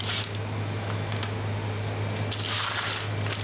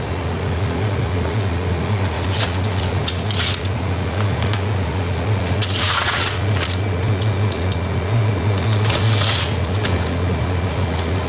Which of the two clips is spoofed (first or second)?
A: second